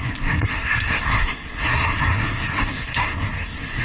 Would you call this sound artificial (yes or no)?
yes